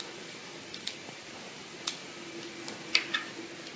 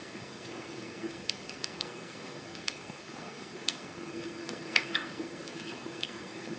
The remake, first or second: second